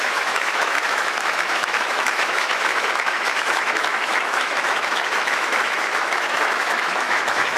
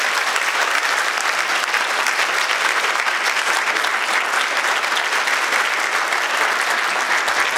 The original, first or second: second